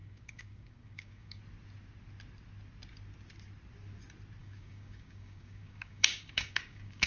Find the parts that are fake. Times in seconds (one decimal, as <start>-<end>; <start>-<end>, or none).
0.0-1.4; 4.4-7.1